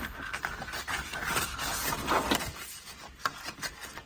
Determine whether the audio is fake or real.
real